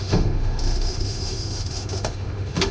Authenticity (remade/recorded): remade